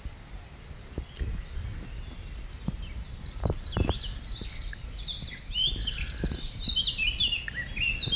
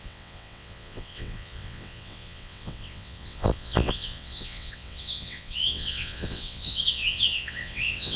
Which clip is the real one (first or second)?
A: first